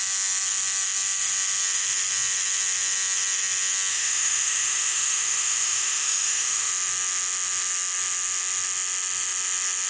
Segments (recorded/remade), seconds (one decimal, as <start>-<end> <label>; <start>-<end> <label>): 0.0-3.9 recorded; 3.9-6.7 remade; 6.7-9.9 recorded